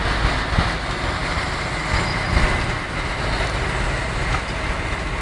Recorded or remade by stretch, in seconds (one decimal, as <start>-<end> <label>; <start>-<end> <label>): 0.0-5.2 recorded